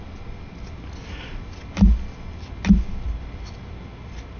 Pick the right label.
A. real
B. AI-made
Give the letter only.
A